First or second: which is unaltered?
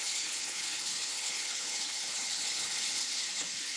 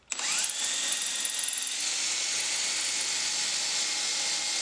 second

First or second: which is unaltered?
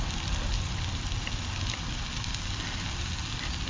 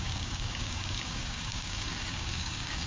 first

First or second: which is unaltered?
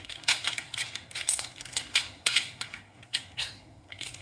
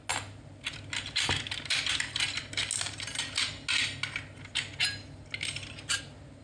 second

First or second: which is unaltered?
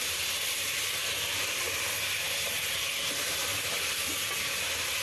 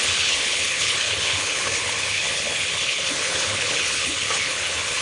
first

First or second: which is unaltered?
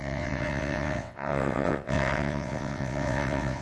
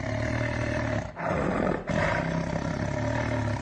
second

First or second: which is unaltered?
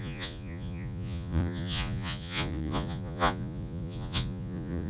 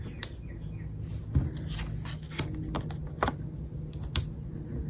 second